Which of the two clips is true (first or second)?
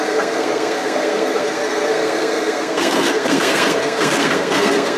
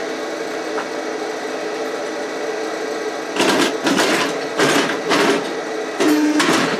second